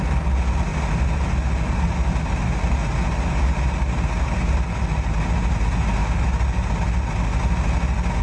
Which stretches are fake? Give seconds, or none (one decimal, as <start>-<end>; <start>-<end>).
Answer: none

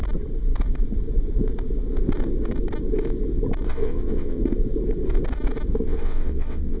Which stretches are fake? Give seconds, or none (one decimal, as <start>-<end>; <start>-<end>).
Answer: 3.7-4.4; 5.8-6.8

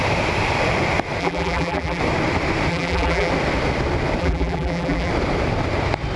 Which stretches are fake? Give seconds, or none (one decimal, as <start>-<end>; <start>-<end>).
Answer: 1.2-2.0; 2.7-3.3; 4.2-5.1

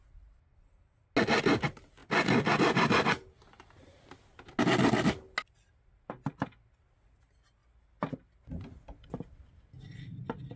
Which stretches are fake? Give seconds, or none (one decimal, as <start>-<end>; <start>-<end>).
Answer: none

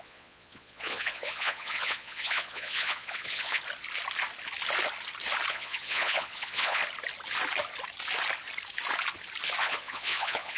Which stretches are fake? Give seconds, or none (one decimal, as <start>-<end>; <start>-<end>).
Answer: 0.0-3.6; 5.5-6.8; 9.6-10.6